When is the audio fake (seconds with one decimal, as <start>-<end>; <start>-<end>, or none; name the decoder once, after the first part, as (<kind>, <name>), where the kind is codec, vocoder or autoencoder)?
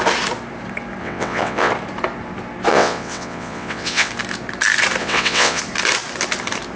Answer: 1.0-1.7 (vocoder, WaveNeXt); 2.7-4.1; 5.0-5.6